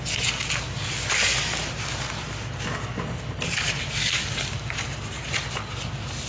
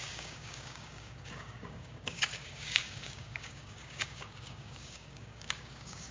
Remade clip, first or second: second